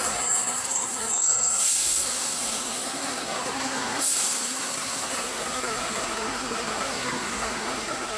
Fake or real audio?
fake